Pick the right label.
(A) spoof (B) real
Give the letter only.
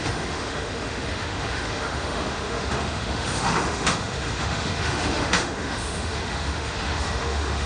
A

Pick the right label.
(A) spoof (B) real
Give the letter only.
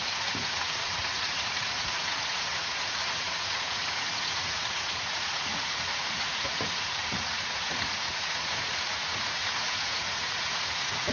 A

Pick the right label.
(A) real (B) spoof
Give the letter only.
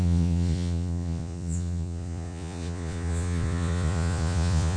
B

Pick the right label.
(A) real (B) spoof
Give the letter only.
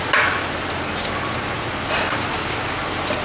A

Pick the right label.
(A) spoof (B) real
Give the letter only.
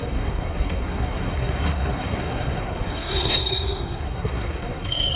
A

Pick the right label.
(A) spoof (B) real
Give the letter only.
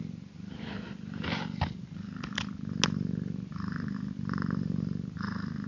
B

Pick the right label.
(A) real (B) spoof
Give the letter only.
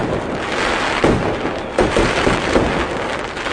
A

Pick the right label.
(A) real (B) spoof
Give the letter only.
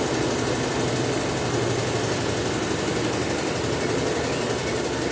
A